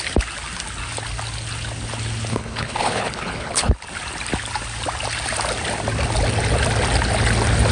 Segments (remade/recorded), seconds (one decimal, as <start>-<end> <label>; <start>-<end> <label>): 0.0-2.3 recorded; 2.3-3.7 remade; 3.7-7.7 recorded